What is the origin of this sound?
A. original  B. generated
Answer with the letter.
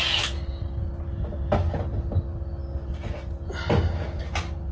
A